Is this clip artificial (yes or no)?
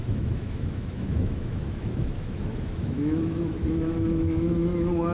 yes